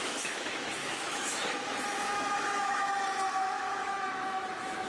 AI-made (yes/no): yes